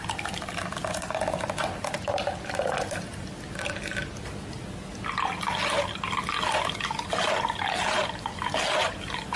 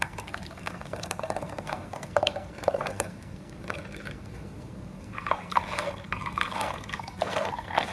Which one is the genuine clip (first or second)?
first